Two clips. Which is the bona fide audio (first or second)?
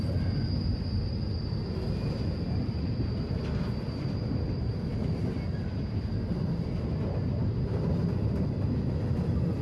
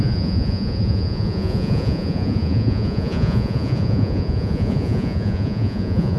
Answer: first